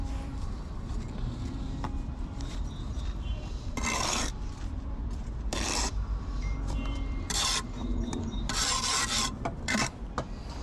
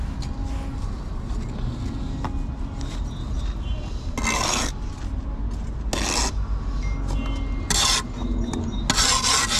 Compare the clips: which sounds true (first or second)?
second